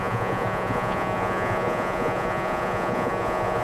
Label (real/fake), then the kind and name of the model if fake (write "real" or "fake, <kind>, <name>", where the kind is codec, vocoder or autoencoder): fake, vocoder, Vocos